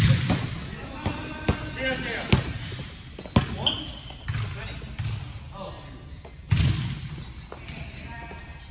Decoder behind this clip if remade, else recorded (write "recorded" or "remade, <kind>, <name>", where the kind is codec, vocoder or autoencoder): recorded